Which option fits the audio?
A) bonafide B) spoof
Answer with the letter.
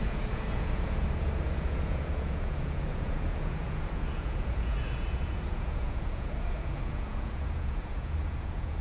B